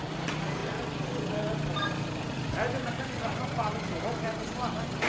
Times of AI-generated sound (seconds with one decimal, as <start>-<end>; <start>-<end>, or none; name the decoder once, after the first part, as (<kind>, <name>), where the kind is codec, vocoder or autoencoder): none